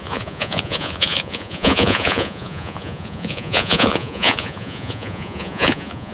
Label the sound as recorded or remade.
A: remade